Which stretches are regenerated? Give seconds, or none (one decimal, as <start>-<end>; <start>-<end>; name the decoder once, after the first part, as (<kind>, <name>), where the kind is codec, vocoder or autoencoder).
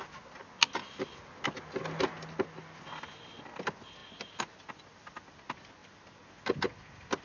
none